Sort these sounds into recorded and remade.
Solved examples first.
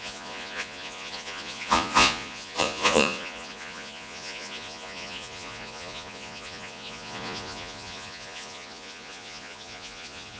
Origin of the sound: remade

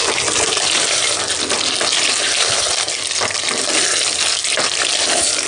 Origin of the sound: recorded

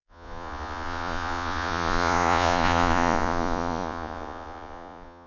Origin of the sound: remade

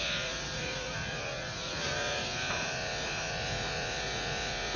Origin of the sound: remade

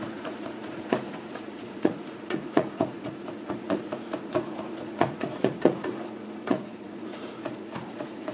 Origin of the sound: remade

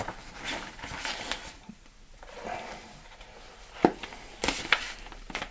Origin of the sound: recorded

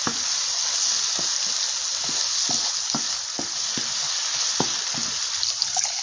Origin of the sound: recorded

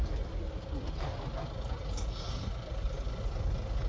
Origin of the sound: recorded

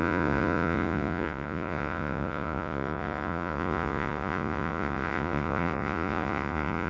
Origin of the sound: remade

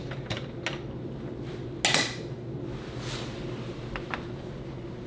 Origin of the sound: recorded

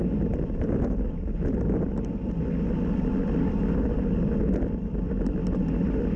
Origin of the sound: recorded